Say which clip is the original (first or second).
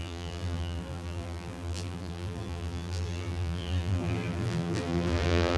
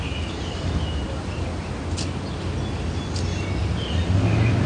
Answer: second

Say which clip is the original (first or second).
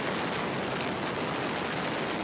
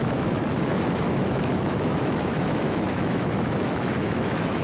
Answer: first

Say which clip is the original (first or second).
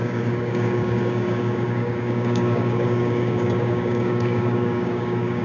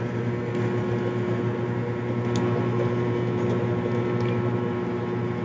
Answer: second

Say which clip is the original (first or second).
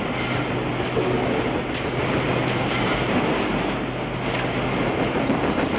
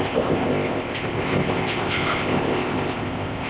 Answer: first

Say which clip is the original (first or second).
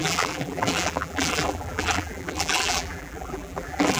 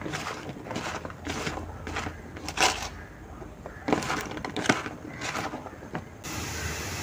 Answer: second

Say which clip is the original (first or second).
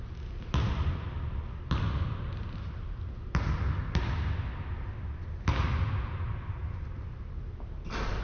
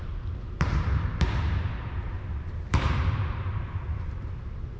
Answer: first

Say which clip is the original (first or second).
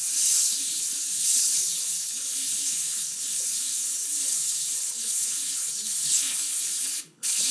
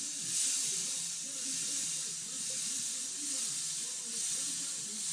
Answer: second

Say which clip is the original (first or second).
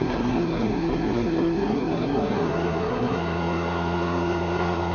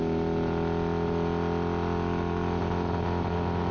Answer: second